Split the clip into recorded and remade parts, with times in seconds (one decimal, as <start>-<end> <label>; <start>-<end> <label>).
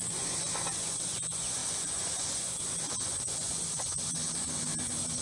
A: 0.0-5.2 remade